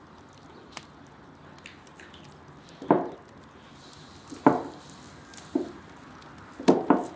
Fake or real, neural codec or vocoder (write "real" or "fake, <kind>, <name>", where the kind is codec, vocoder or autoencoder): real